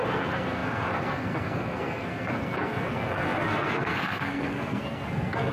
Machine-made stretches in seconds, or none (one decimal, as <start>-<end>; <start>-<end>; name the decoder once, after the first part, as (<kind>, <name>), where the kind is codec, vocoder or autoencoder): 0.0-5.5 (codec, SNAC)